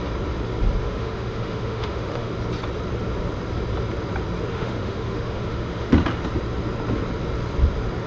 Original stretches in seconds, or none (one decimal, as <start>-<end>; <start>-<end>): 0.0-0.8; 2.3-4.5; 5.9-8.1